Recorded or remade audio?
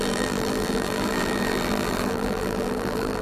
remade